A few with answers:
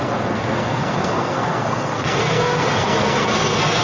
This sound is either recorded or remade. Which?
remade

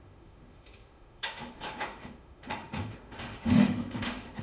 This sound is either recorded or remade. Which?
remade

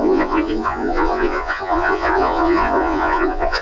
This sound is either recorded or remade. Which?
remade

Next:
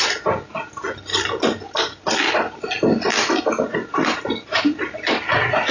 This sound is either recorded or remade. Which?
recorded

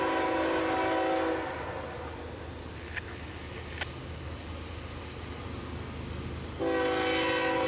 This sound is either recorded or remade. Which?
recorded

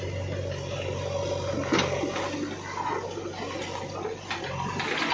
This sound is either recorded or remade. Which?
recorded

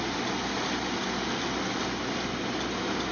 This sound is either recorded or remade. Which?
recorded